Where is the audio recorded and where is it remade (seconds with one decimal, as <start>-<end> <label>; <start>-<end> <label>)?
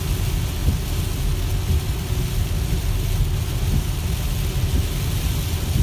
0.0-5.8 recorded